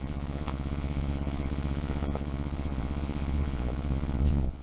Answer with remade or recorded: remade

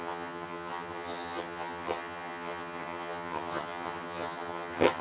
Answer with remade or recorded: remade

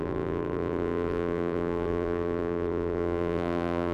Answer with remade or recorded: remade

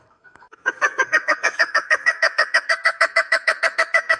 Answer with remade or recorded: remade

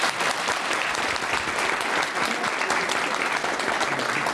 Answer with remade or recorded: recorded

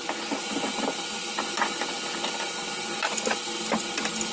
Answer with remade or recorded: recorded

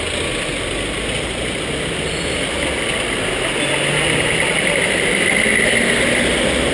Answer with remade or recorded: recorded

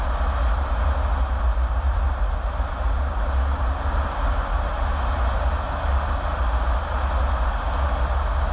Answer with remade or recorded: recorded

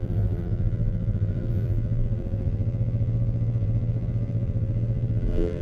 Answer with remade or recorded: remade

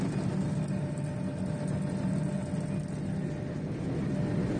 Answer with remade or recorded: recorded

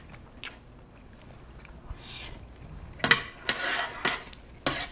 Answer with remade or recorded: recorded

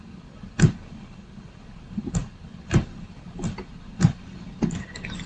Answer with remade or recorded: recorded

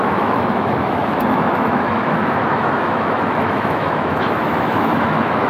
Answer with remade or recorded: remade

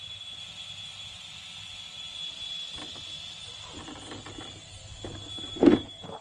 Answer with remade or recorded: recorded